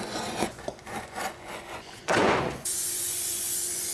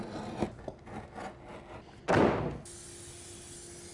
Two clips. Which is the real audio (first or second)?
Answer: second